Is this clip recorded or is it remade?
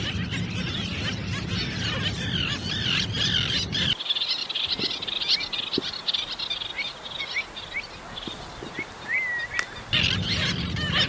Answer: recorded